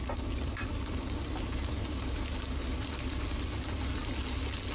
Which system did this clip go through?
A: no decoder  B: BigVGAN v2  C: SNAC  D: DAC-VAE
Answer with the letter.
A